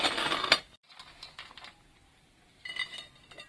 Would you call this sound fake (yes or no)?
no